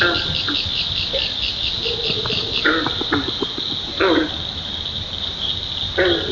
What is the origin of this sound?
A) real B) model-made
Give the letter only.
A